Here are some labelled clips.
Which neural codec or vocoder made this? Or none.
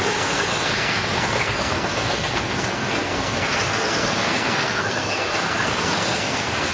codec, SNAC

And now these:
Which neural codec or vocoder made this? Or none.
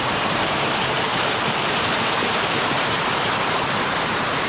vocoder, BigVGAN v2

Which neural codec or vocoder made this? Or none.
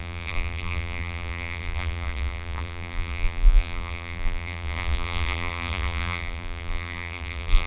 vocoder, BigVGAN v2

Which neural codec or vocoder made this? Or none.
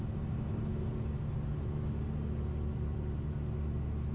none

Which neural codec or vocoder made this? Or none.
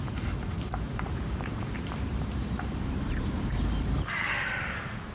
vocoder, BigVGAN v2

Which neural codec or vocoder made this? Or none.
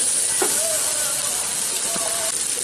none